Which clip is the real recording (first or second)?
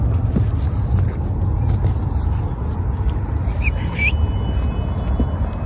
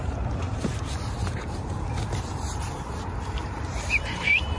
first